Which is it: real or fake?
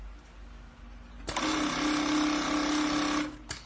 real